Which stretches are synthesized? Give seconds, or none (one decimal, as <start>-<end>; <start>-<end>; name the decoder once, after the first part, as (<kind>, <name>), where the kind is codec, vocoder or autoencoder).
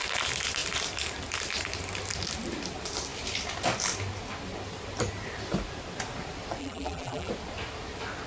6.6-7.3 (vocoder, BigVGAN v2)